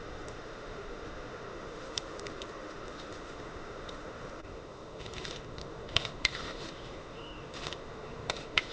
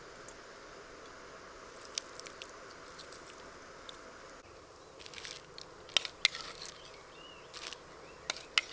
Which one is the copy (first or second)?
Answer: first